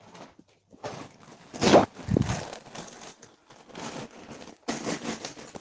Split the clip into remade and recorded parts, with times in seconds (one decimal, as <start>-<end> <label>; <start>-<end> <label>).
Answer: 0.0-0.8 recorded; 0.8-1.9 remade; 1.9-5.6 recorded